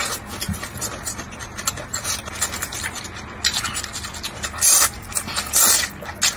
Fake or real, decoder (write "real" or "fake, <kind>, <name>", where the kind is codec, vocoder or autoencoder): real